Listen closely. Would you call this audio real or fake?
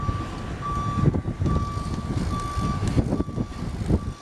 real